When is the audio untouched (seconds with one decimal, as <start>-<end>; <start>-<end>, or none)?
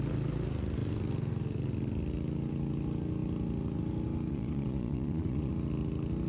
0.0-4.3; 5.5-6.3